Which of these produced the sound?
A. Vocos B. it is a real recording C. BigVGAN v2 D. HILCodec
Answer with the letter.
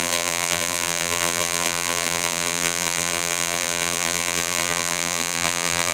C